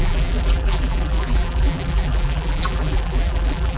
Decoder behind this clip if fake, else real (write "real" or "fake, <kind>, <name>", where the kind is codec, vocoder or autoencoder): fake, vocoder, BigVGAN v2